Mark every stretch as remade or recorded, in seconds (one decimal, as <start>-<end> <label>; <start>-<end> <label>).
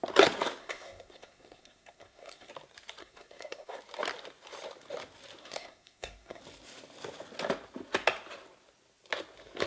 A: 0.0-0.6 recorded; 0.6-2.5 remade; 2.5-3.0 recorded; 3.0-3.8 remade; 3.8-5.4 recorded; 5.4-6.4 remade; 6.4-9.7 recorded